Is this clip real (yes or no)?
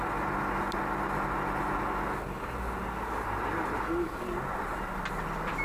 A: yes